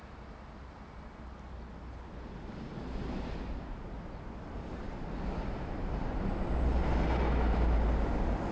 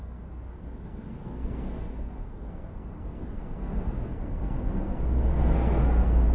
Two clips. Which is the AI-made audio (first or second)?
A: second